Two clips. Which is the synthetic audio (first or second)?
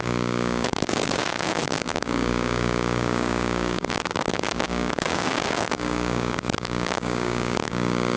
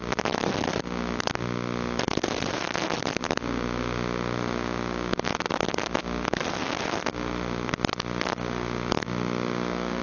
first